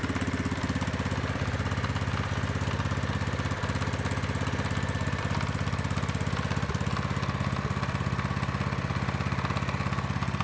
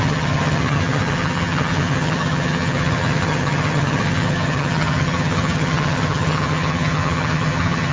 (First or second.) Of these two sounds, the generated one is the second